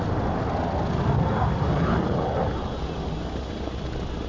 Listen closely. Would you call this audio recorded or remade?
recorded